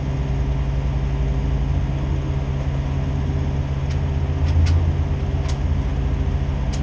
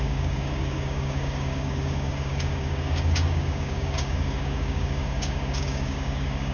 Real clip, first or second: first